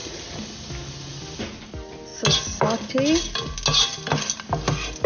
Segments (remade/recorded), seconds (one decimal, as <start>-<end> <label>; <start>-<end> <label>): 0.0-5.1 recorded